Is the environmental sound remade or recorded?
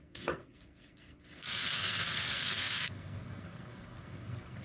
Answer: remade